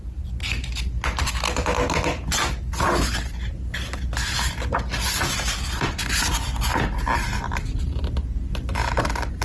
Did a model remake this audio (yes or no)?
no